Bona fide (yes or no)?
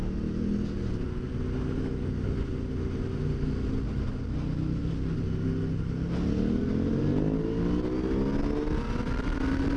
yes